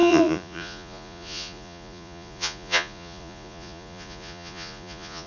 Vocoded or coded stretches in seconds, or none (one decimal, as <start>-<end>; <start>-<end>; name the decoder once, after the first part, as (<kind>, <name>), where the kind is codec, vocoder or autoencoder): 0.0-5.3 (vocoder, Vocos)